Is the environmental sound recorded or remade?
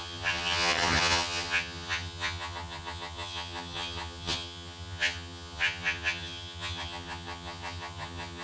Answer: remade